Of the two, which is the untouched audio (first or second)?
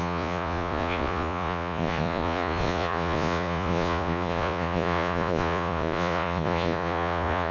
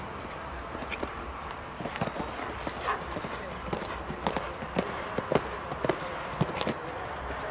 second